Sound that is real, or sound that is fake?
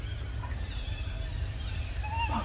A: real